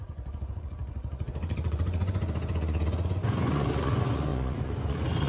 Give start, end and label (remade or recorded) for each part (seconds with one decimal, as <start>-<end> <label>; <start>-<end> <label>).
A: 0.0-5.3 remade